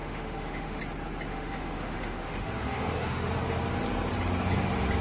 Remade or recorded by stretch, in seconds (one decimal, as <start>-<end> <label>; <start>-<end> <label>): 0.0-0.8 remade; 0.8-1.3 recorded; 1.3-3.3 remade; 3.3-5.0 recorded